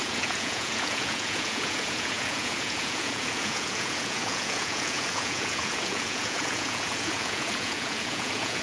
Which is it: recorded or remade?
remade